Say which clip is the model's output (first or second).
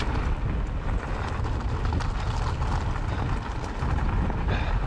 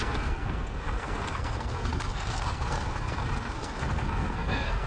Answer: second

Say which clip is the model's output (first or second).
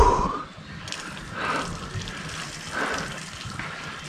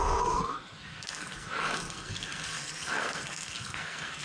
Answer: second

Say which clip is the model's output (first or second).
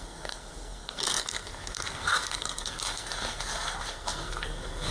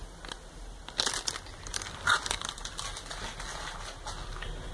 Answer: first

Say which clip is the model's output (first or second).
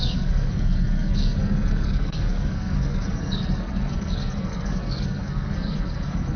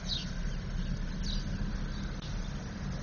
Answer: first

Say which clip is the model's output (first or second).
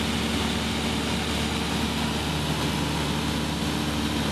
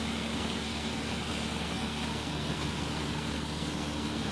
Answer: second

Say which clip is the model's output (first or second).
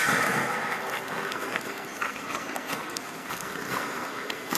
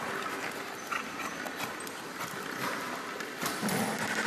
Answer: first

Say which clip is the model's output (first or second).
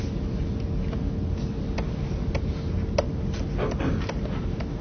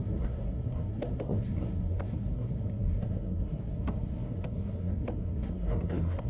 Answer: second